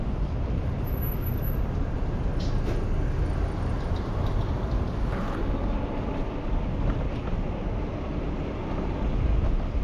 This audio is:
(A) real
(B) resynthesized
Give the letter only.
A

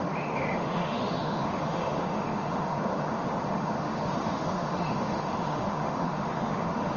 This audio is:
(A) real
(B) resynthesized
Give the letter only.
B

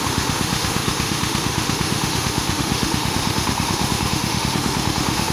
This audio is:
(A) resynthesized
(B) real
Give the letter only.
A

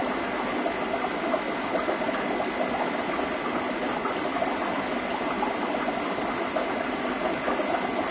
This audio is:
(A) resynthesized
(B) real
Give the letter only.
B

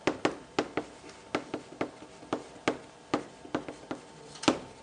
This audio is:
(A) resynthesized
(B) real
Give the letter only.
B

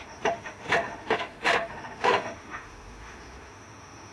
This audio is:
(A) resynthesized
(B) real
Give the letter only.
A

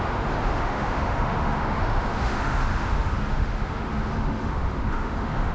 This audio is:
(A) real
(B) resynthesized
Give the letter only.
B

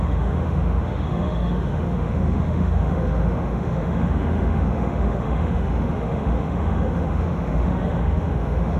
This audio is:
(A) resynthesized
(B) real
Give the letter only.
A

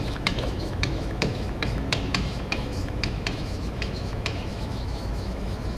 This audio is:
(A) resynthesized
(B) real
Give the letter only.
A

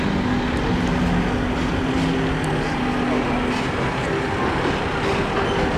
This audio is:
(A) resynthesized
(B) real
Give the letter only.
B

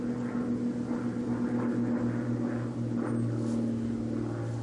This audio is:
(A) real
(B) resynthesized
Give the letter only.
A